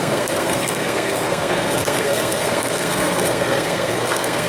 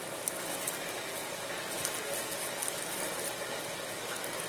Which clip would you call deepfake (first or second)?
first